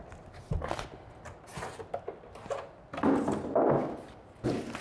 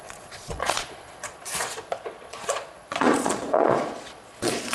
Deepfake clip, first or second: second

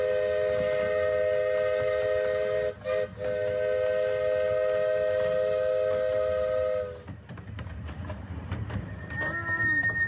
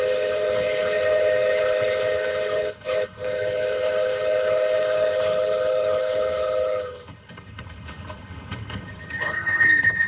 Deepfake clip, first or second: second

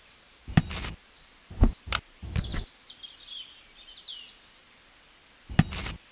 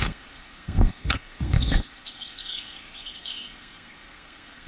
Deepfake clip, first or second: second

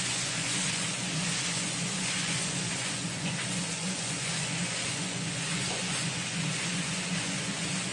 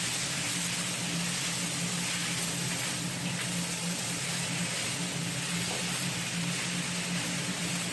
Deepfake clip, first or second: first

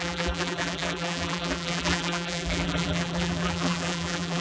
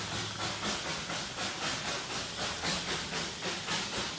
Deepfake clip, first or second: first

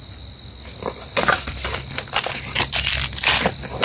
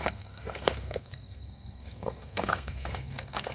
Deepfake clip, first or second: second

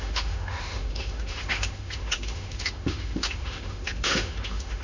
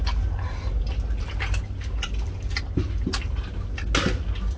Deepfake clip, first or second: first